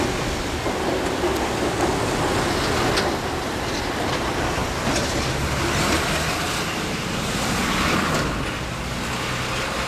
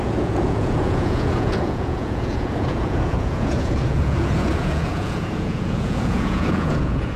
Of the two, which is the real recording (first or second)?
first